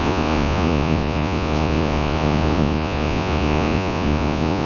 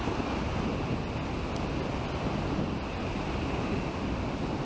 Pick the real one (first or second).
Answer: second